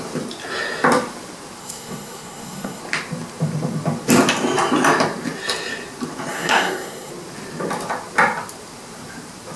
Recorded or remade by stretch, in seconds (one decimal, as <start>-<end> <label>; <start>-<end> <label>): 0.0-1.6 recorded; 1.6-2.8 remade; 2.8-6.3 recorded; 6.3-7.1 remade; 7.1-9.6 recorded